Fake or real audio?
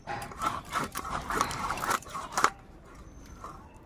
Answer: fake